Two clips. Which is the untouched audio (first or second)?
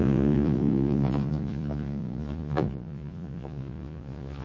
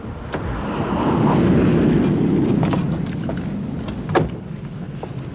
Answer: second